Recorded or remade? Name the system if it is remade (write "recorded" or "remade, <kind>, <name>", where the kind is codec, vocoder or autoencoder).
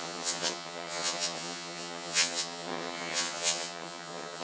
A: remade, vocoder, HiFi-GAN